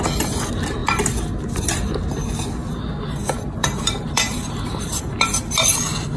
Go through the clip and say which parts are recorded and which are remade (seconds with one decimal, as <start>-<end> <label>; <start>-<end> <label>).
0.0-3.6 recorded; 3.6-5.0 remade; 5.0-6.2 recorded